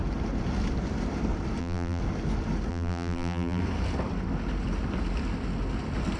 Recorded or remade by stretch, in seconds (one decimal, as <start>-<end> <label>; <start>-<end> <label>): 0.0-1.6 recorded; 1.6-2.0 remade; 2.0-2.7 recorded; 2.7-3.6 remade; 3.6-6.2 recorded

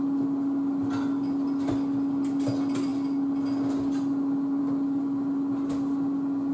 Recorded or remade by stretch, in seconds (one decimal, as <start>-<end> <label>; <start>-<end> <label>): 0.0-6.5 recorded

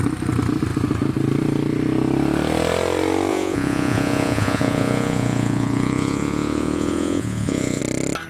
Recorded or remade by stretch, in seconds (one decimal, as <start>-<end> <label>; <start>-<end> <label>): 0.0-3.3 recorded; 3.3-7.8 remade; 7.8-8.3 recorded

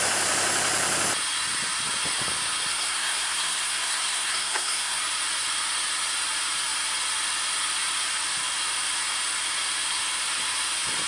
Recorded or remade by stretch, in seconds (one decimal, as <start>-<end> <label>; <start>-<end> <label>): 0.0-2.7 recorded; 2.7-5.0 remade; 5.0-11.1 recorded